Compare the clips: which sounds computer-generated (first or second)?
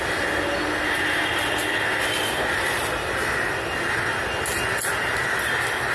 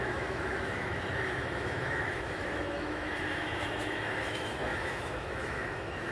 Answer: second